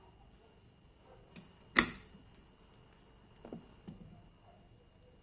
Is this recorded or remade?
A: recorded